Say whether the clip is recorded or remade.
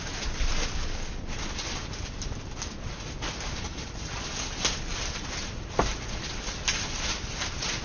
recorded